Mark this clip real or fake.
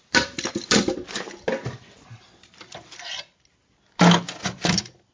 real